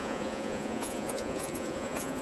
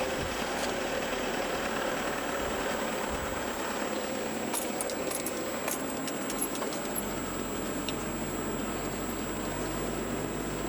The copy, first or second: first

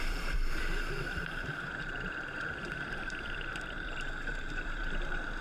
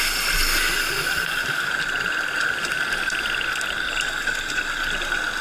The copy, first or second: first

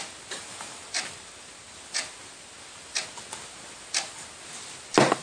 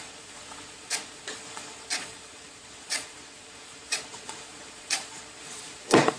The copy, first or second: second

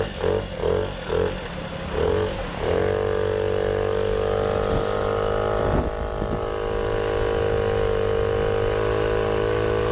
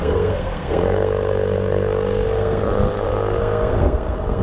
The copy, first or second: second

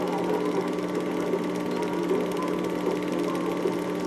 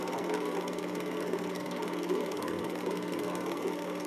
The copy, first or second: second